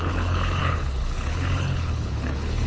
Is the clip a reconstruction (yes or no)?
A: yes